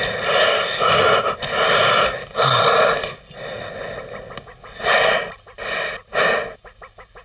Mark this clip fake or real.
real